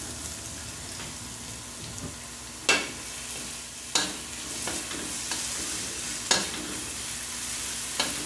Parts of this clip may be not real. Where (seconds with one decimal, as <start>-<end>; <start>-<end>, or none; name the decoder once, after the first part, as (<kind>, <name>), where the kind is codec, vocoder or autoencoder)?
none